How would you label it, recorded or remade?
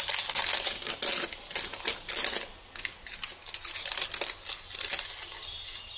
recorded